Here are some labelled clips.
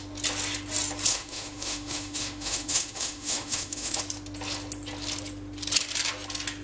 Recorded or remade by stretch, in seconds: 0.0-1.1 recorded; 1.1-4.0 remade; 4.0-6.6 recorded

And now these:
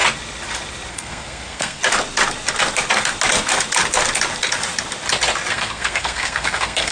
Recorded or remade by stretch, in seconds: 0.0-0.9 recorded; 0.9-1.8 remade; 1.8-5.5 recorded; 5.5-6.9 remade

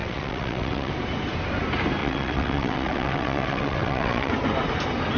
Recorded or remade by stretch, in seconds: 0.0-0.9 remade; 0.9-2.0 recorded; 2.0-4.3 remade; 4.3-5.2 recorded

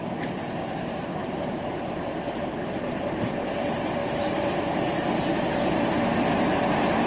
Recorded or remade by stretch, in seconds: 0.0-1.2 recorded; 1.2-3.3 remade; 3.3-7.1 recorded